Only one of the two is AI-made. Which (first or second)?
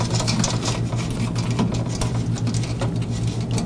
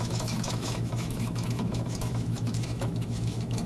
second